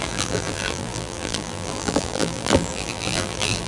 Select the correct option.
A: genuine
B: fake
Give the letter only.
B